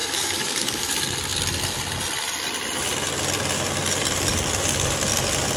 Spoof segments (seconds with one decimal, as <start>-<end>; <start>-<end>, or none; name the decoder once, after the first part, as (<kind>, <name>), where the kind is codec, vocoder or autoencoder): 0.0-0.9 (codec, DAC)